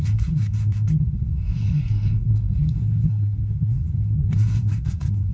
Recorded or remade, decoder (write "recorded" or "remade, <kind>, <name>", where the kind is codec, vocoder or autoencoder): remade, codec, SNAC